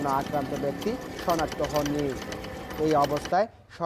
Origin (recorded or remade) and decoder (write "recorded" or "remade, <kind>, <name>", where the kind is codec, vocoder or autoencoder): recorded